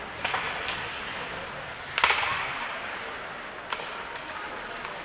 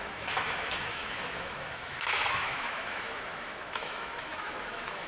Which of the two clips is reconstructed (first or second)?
second